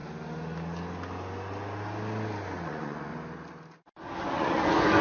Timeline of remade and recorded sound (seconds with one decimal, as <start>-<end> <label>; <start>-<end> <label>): 0.0-2.6 recorded; 2.6-3.1 remade; 3.1-4.2 recorded; 4.2-5.0 remade